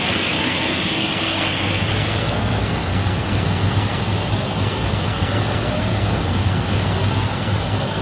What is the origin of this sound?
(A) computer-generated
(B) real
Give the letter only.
A